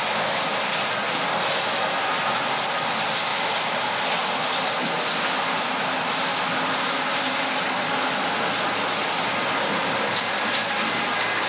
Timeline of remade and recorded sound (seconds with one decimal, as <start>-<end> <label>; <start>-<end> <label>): 0.0-11.5 recorded